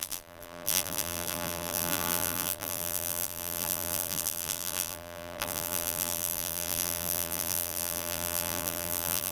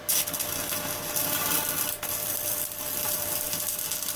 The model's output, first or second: first